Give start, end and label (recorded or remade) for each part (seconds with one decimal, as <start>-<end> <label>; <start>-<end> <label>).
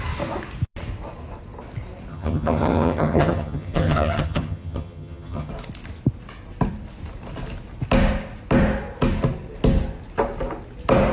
0.0-2.1 recorded; 2.1-5.5 remade; 5.5-11.1 recorded